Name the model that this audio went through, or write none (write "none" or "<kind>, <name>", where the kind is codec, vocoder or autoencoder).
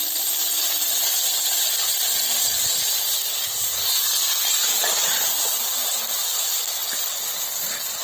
none